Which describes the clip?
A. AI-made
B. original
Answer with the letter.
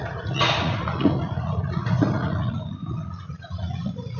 A